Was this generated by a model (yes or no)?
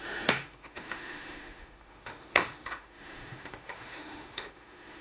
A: yes